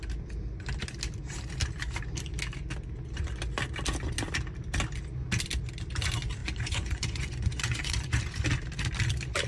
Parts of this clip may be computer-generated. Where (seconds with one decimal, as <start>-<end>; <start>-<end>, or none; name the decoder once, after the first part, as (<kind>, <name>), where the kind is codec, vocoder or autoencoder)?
6.4-8.2 (vocoder, Vocos)